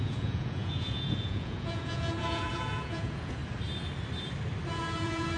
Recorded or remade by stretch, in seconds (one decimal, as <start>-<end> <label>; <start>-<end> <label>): 0.0-3.4 remade; 3.4-4.7 recorded; 4.7-5.4 remade

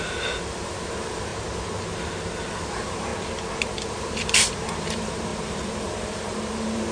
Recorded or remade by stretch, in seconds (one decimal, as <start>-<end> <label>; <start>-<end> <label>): 0.0-1.3 remade; 1.3-2.5 recorded; 2.5-3.1 remade; 3.1-3.9 recorded; 3.9-6.9 remade